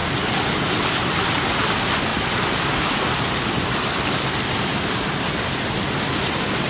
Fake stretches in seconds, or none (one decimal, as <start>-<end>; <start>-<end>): none